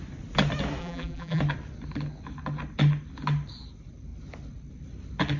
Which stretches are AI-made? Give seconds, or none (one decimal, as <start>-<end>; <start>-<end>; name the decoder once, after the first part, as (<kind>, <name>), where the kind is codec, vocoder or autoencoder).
0.8-1.4 (vocoder, BigVGAN v2)